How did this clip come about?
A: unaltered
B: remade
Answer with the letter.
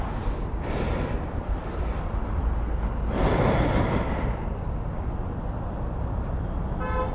A